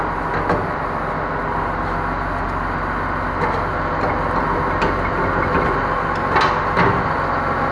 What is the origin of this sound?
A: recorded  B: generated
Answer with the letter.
A